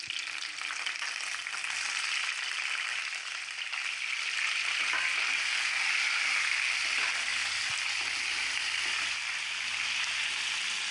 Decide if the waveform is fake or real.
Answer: real